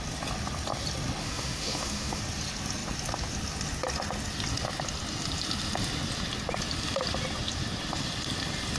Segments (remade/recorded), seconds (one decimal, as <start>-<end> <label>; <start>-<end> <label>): 0.0-1.2 recorded; 1.2-2.2 remade; 2.2-8.8 recorded